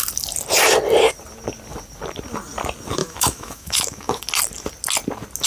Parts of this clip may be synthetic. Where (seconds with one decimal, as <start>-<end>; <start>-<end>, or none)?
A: 3.0-4.2